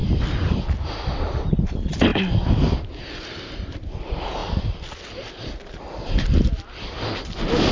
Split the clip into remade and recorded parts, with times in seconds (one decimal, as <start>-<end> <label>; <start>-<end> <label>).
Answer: 0.0-7.7 recorded